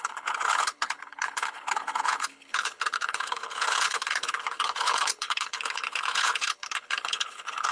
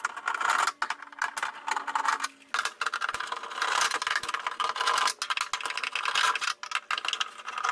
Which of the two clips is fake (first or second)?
first